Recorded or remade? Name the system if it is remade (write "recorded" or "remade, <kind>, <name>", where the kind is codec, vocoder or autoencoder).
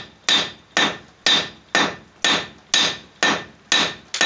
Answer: recorded